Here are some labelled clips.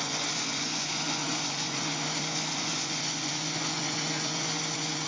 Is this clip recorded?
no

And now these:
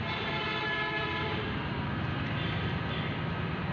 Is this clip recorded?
yes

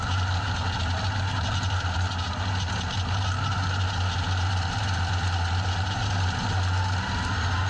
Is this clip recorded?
yes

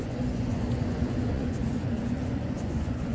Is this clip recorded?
no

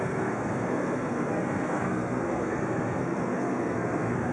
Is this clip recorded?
no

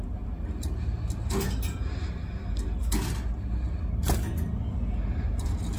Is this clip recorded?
yes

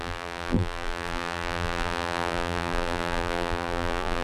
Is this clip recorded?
no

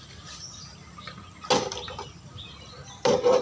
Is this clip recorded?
yes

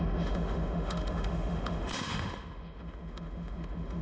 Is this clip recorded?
no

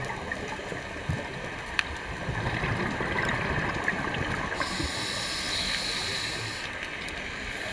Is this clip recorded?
yes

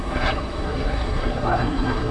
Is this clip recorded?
no